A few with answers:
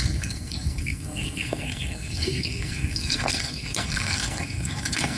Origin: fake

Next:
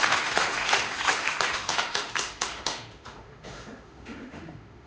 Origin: fake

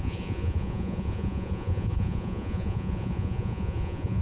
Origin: fake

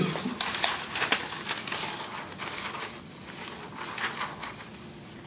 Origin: real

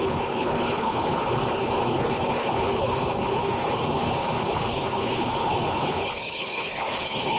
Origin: fake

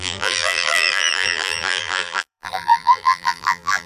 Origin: fake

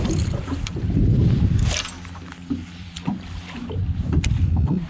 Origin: fake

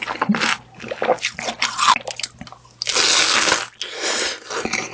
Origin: real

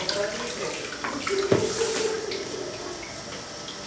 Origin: real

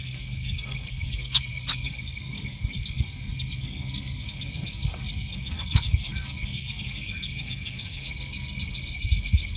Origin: fake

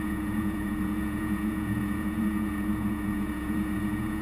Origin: fake